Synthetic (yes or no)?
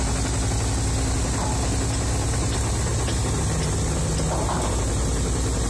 no